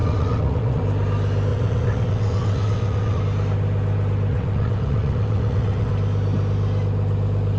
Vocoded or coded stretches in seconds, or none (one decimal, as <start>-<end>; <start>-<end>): 0.0-0.8; 1.5-3.2; 4.3-5.9